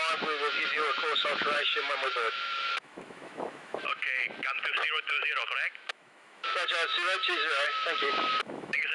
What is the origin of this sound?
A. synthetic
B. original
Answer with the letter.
A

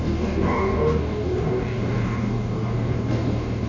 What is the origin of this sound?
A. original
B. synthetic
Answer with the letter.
B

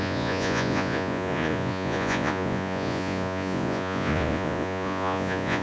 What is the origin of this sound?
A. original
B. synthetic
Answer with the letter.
B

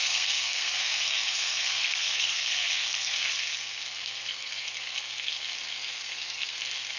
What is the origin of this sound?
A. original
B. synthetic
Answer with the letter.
B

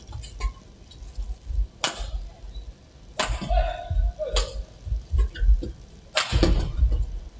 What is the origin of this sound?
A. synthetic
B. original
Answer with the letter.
B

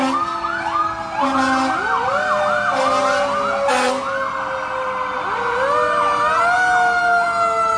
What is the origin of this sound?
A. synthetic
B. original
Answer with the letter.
B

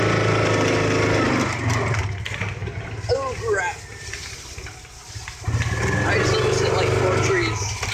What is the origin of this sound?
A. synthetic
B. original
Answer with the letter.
B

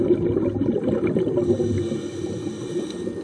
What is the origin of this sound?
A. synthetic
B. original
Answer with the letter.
B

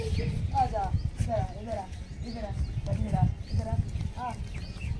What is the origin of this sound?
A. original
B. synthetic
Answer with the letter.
A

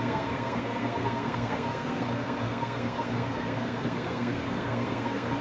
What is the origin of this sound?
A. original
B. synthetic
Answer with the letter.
B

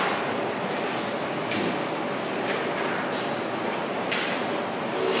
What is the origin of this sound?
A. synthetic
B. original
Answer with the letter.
B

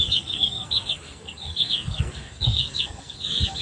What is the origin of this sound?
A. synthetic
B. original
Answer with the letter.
A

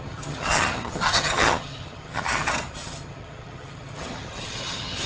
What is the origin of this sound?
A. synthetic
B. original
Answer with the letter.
A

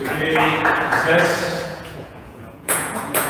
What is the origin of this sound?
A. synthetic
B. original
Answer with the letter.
A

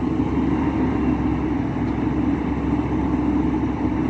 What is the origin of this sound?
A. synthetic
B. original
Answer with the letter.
B